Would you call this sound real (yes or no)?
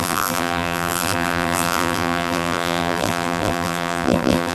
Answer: no